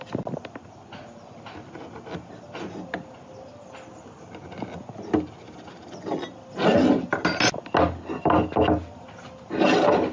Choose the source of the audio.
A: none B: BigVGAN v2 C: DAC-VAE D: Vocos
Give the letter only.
A